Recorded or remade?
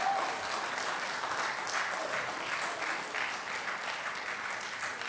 recorded